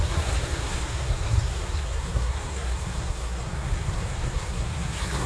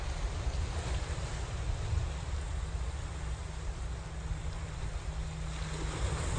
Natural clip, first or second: second